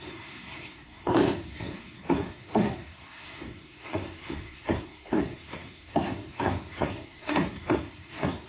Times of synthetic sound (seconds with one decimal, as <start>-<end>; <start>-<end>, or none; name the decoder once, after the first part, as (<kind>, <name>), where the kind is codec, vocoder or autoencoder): 0.0-8.5 (codec, SNAC)